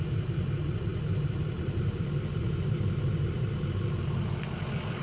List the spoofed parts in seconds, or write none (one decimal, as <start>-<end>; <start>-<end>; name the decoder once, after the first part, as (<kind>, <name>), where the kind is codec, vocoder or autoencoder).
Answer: none

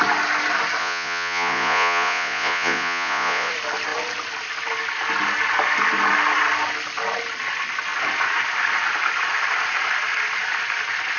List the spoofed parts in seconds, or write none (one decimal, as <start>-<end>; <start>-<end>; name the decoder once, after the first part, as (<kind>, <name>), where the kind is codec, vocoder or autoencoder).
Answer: 0.8-3.5 (vocoder, Vocos)

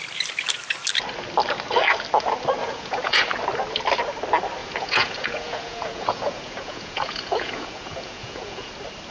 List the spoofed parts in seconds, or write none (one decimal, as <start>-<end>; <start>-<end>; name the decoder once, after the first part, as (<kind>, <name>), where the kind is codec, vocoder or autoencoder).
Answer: 2.6-3.2 (vocoder, Vocos); 4.6-8.7

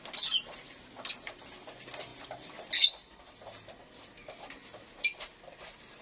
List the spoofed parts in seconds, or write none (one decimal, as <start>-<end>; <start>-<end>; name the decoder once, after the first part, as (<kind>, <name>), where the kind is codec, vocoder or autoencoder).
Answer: none